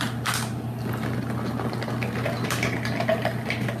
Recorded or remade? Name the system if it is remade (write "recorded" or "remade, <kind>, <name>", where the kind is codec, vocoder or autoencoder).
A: recorded